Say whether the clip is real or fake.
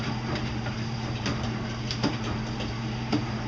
fake